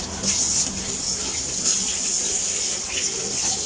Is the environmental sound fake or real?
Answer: real